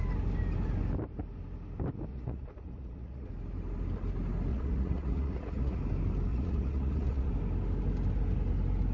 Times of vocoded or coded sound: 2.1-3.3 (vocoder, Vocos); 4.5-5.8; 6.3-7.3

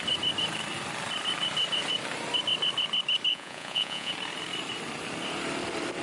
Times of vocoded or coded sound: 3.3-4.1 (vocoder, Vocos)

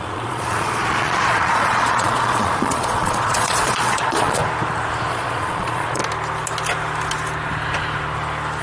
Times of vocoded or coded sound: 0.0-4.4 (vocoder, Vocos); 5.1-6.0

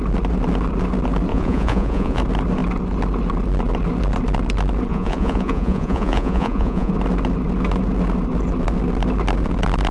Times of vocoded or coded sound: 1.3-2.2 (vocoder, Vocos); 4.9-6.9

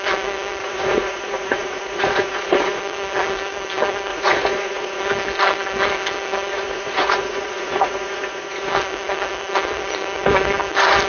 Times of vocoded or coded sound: 0.6-2.8 (vocoder, Vocos); 4.1-5.0; 6.5-8.7